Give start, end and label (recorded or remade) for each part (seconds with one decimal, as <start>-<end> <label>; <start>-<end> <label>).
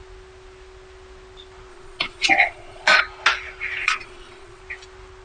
0.0-1.7 recorded; 1.7-3.0 remade; 3.0-3.8 recorded; 3.8-4.6 remade; 4.6-5.2 recorded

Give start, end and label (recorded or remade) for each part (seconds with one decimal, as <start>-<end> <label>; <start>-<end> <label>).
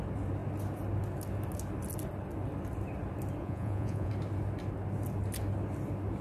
0.0-3.4 recorded; 3.4-4.1 remade; 4.1-6.2 recorded